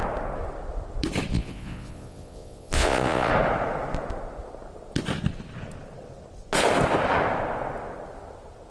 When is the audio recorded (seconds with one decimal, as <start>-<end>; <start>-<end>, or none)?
0.0-1.3; 3.3-8.7